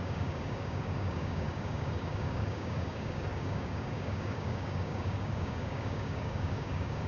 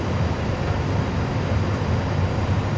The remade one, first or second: first